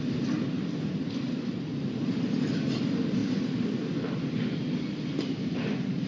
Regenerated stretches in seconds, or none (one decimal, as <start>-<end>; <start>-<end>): 3.2-3.9